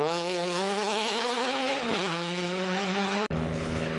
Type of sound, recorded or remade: remade